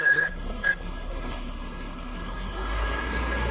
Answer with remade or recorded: remade